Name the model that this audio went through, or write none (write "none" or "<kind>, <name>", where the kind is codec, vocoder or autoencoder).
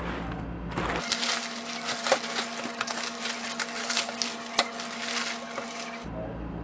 none